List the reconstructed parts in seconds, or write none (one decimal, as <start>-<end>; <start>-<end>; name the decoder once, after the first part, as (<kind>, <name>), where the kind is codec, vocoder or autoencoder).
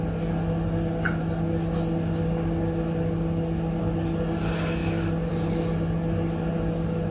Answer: none